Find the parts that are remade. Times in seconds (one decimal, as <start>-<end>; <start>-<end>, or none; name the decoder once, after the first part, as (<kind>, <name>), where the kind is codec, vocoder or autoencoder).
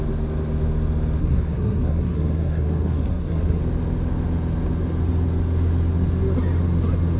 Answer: 1.2-3.6 (codec, SNAC)